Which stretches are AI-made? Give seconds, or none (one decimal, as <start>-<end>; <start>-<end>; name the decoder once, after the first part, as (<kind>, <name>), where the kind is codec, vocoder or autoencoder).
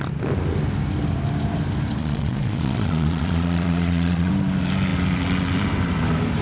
2.0-4.3 (vocoder, Vocos)